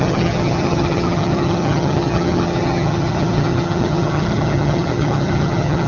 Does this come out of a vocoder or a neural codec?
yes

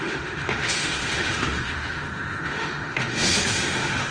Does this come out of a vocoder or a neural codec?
yes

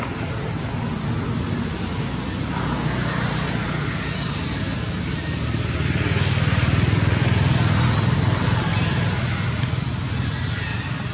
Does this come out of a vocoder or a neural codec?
no